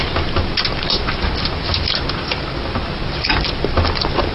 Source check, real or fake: real